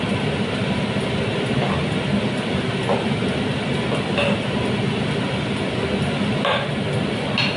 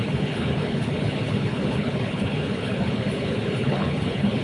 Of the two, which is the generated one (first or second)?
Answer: second